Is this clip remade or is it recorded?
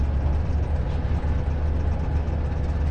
recorded